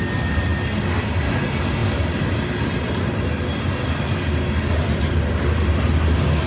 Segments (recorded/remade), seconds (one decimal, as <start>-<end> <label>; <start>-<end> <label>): 0.0-6.5 recorded